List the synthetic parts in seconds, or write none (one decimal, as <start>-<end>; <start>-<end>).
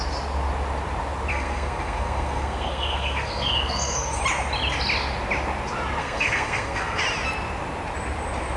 1.3-4.2; 6.0-7.0